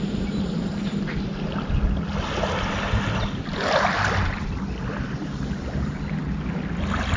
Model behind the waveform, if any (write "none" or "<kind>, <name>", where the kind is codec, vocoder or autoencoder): none